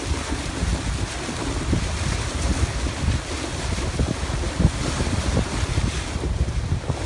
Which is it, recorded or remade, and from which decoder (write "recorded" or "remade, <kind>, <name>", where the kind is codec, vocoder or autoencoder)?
recorded